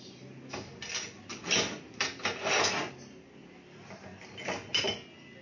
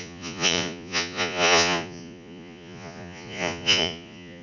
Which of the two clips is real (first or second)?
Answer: first